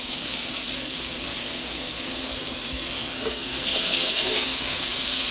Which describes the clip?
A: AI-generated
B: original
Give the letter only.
A